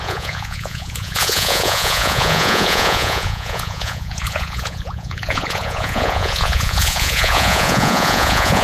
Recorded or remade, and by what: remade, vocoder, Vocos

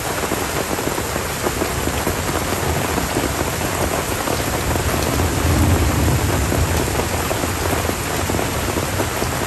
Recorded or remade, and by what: recorded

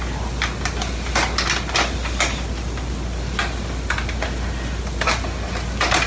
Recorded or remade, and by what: recorded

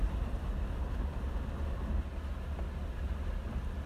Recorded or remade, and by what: recorded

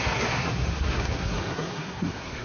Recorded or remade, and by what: remade, codec, SNAC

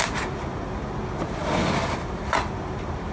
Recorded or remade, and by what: recorded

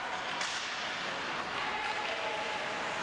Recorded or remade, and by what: recorded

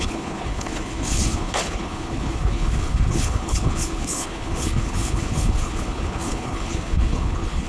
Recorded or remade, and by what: remade, codec, HILCodec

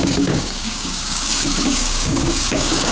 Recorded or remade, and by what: remade, codec, DAC